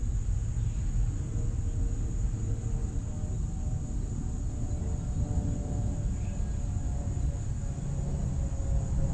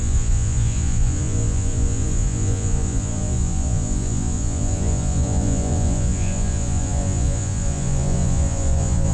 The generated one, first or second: second